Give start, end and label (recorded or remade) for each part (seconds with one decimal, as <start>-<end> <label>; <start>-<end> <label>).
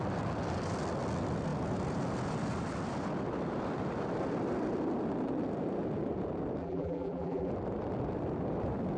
0.0-6.6 recorded; 6.6-7.5 remade; 7.5-9.0 recorded